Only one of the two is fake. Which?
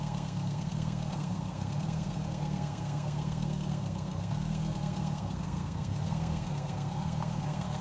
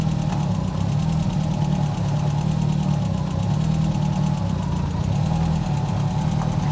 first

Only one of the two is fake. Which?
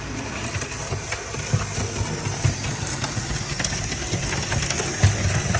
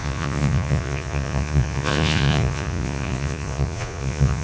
second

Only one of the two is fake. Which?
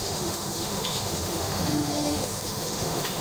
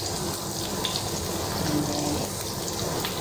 first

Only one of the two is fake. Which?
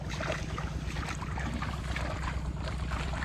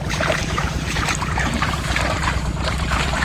second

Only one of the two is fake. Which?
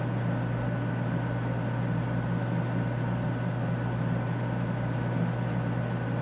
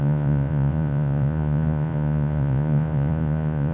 second